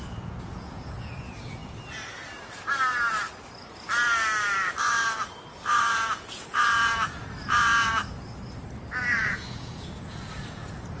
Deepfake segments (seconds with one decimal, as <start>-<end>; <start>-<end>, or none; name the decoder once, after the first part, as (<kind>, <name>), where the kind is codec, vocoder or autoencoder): 0.0-1.6 (vocoder, Vocos); 5.8-8.0; 9.0-11.0